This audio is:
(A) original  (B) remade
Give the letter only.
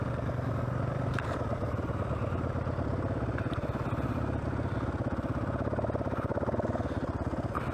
A